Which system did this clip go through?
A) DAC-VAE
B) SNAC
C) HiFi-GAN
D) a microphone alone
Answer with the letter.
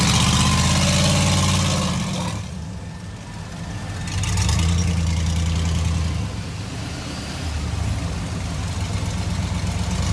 D